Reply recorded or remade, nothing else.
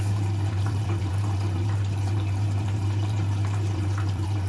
remade